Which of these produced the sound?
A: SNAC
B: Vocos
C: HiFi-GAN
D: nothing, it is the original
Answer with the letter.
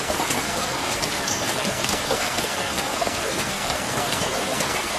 A